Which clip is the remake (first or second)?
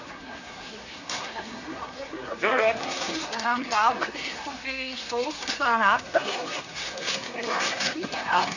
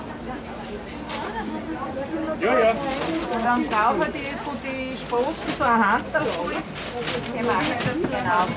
first